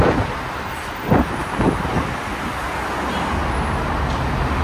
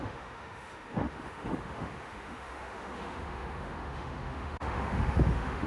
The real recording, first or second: first